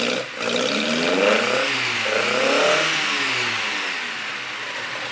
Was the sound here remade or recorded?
recorded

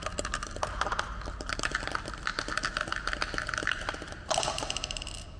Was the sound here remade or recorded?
recorded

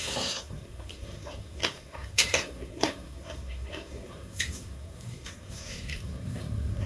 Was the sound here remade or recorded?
remade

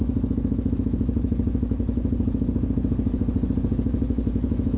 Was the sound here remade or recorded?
remade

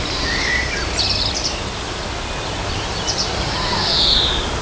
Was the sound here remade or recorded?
recorded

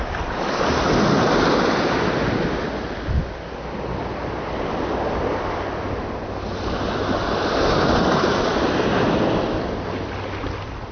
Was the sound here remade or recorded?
recorded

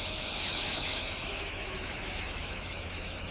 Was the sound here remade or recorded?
remade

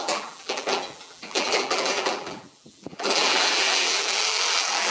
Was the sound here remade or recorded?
remade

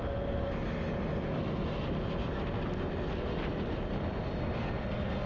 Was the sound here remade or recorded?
recorded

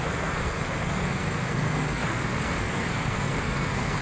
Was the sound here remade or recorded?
remade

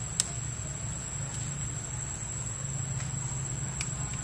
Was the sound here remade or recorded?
recorded